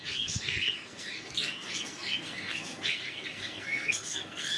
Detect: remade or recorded remade